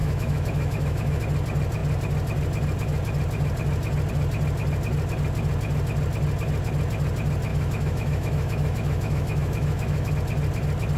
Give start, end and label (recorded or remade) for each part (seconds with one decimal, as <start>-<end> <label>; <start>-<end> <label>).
0.0-1.2 remade; 1.2-7.5 recorded; 7.5-10.1 remade; 10.1-11.0 recorded